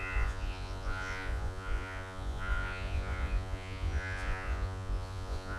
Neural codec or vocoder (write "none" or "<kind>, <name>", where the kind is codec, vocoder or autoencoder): vocoder, Vocos